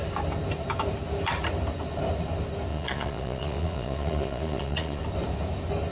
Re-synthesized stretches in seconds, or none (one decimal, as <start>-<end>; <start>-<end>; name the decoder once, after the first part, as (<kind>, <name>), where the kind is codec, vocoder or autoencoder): 2.7-5.0 (vocoder, Vocos)